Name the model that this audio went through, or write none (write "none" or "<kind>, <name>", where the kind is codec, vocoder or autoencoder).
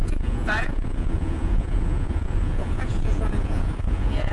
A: vocoder, Vocos